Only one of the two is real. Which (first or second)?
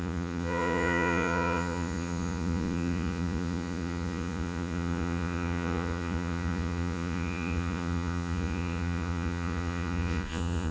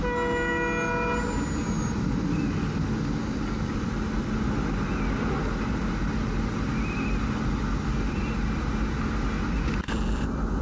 second